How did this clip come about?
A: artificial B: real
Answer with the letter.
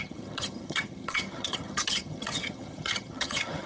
A